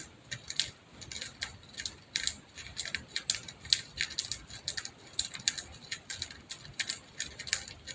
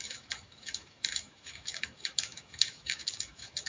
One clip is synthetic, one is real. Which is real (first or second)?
first